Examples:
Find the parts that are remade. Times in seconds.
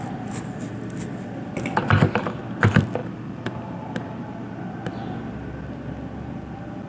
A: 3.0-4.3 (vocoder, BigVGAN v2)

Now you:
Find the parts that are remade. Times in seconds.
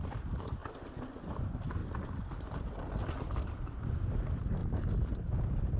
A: 0.0-0.6 (vocoder, BigVGAN v2); 1.2-1.8; 3.4-4.6